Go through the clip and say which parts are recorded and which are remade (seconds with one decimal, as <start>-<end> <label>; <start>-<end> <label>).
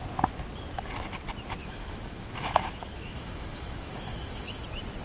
0.0-1.6 recorded; 1.6-4.6 remade; 4.6-5.0 recorded